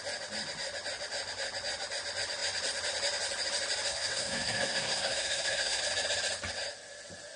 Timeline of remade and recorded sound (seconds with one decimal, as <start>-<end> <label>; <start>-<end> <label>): 0.0-3.9 recorded; 3.9-5.8 remade; 5.8-7.4 recorded